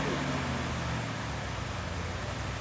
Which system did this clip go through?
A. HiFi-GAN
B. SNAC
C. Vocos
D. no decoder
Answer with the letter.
D